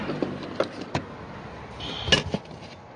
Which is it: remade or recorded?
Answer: recorded